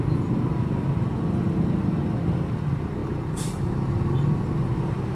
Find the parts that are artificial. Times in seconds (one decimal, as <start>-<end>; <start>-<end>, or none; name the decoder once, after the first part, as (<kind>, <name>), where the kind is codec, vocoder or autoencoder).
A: none